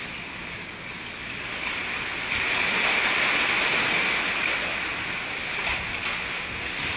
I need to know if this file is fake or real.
real